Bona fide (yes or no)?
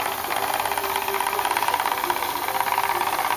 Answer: yes